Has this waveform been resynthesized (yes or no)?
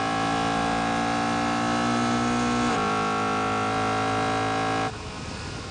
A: no